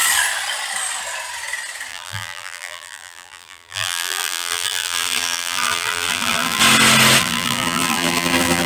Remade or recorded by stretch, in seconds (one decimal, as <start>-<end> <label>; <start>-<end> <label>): 0.0-1.9 recorded; 1.9-6.6 remade; 6.6-7.2 recorded; 7.2-8.7 remade